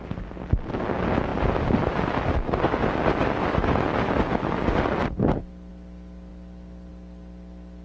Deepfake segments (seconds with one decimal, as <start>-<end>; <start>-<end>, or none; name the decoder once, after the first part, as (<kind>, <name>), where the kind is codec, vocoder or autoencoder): none